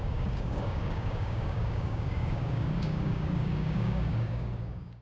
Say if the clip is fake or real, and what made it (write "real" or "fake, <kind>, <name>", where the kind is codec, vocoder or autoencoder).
fake, codec, DAC